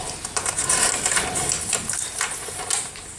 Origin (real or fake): real